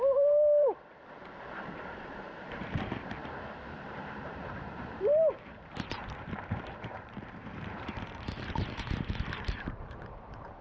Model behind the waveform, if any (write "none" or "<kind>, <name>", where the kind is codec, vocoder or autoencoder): vocoder, BigVGAN v2